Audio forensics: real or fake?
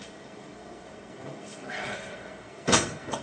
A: fake